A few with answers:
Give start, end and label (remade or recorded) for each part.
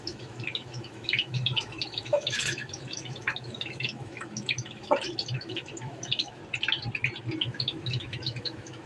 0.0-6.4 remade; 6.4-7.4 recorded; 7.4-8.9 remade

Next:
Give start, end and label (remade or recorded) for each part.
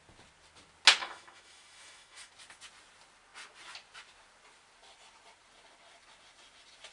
0.0-1.0 recorded; 1.0-2.3 remade; 2.3-6.9 recorded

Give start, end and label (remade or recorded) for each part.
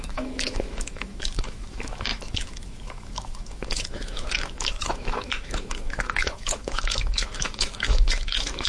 0.0-8.7 remade